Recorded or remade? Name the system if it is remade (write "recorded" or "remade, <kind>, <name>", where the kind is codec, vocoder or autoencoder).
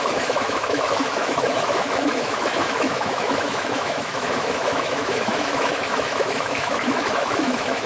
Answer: remade, autoencoder, DAC-VAE